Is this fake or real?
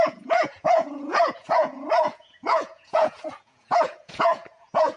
fake